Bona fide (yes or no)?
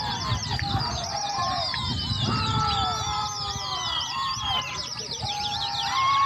no